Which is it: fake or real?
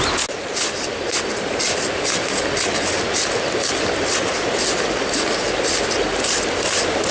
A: real